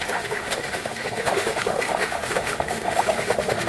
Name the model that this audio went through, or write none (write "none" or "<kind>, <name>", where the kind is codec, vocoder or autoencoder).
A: autoencoder, DAC-VAE